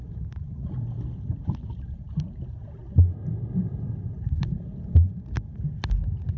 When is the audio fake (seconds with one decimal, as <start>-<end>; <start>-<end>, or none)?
none